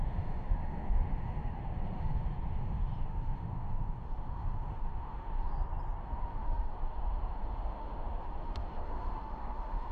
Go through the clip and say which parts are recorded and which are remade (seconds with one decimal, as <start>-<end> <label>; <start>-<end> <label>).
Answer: 0.0-5.5 remade; 5.5-6.0 recorded; 6.0-9.9 remade